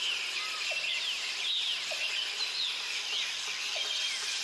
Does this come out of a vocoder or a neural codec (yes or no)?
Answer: no